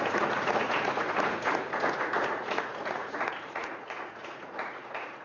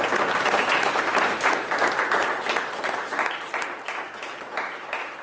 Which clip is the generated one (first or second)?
first